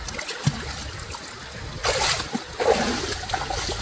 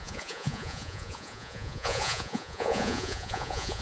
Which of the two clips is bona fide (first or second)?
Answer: first